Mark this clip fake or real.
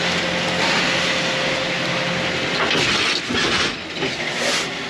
real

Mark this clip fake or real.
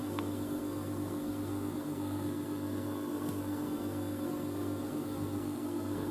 fake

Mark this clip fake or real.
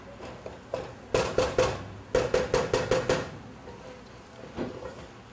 real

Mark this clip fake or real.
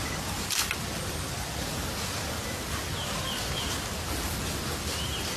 real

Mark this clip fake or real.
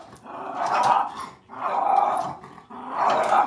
real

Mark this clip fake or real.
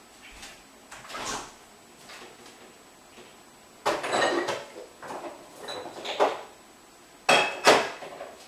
real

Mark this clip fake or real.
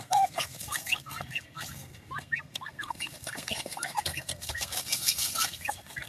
fake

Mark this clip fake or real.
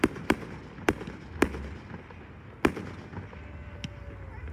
real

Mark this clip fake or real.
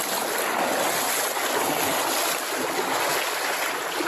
real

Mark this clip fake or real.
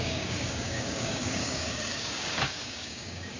fake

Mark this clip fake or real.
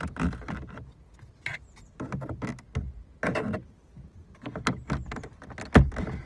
real